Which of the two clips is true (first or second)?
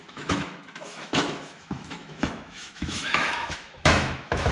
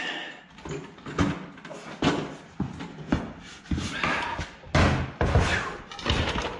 second